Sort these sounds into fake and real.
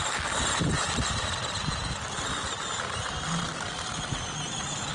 real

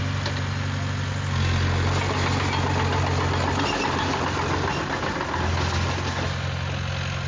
real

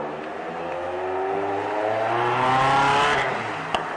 real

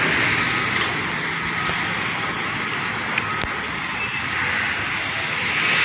real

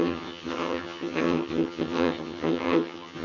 fake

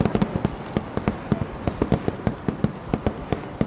real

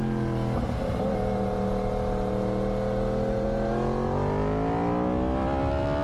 real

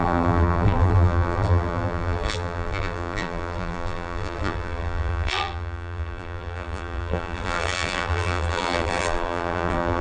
fake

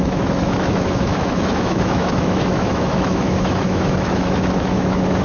fake